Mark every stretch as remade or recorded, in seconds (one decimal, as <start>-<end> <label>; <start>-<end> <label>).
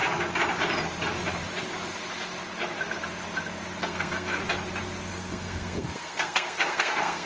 0.0-3.8 recorded; 3.8-4.4 remade; 4.4-5.1 recorded; 5.1-7.3 remade